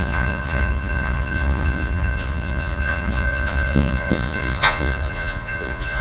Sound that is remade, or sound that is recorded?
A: remade